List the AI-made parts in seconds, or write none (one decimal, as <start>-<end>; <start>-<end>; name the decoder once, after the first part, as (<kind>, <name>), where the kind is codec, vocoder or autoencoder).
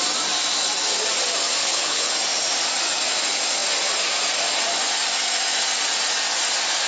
1.6-2.1 (codec, HILCodec)